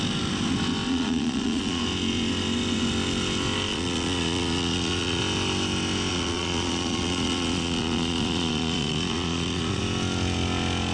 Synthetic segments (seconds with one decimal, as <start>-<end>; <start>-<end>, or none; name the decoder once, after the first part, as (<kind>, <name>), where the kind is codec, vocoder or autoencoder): 0.9-1.8 (vocoder, Vocos); 3.7-5.2; 6.1-9.8